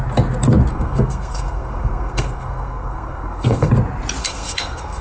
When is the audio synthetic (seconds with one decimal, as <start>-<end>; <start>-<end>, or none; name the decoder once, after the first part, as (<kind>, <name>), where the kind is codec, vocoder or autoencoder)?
0.7-3.7 (codec, SNAC); 4.2-5.0